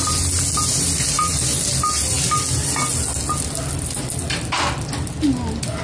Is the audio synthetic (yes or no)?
no